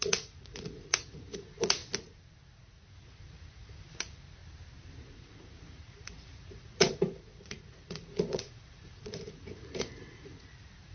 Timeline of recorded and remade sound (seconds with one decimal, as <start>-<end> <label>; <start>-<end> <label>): 0.0-1.8 remade; 1.8-2.5 recorded; 2.5-4.4 remade; 4.4-5.0 recorded; 5.0-10.9 remade